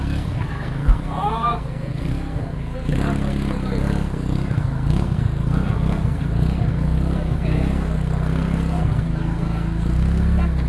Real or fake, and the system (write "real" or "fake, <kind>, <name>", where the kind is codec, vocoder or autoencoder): fake, codec, SNAC